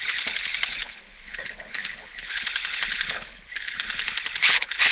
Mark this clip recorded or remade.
remade